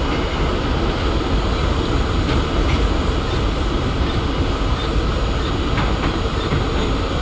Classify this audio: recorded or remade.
recorded